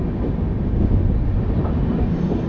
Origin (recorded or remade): recorded